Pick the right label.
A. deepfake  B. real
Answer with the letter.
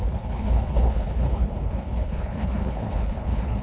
A